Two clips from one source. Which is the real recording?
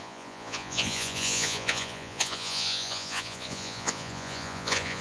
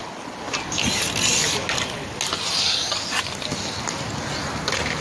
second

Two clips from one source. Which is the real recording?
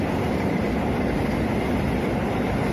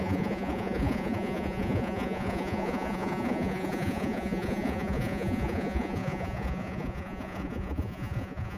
first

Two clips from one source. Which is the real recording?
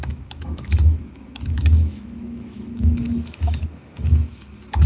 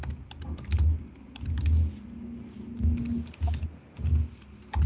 second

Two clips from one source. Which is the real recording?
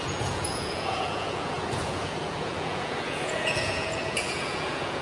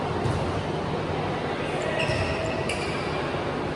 second